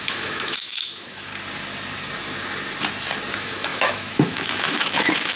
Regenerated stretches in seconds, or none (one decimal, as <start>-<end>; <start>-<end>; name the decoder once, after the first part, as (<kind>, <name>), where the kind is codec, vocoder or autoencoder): 0.0-1.3 (autoencoder, DAC-VAE); 3.3-5.4

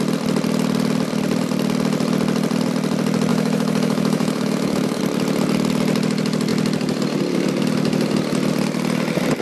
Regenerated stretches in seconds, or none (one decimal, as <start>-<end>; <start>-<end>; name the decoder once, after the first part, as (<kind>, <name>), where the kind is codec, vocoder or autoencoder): 3.3-5.0 (autoencoder, DAC-VAE)

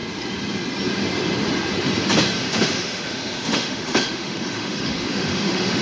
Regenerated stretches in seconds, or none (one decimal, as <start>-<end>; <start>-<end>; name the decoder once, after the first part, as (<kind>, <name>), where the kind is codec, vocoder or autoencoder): 2.4-5.8 (autoencoder, DAC-VAE)